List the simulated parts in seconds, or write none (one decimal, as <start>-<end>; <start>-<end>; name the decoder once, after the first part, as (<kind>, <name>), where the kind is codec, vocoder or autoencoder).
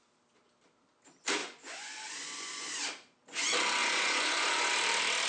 1.4-2.8 (vocoder, Vocos); 3.8-4.7